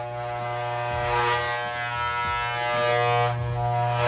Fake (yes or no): no